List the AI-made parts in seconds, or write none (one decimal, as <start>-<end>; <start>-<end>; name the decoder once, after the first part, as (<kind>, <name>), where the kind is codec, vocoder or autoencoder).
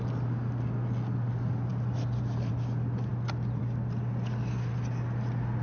none